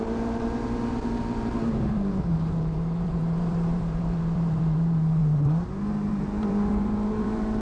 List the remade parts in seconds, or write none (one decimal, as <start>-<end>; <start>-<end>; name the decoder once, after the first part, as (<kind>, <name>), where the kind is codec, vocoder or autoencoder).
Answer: 0.0-5.2 (vocoder, BigVGAN v2); 6.1-7.6